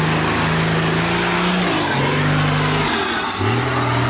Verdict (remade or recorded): recorded